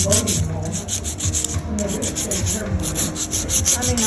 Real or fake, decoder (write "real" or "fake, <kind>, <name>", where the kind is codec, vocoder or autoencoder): real